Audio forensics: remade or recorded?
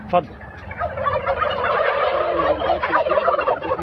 remade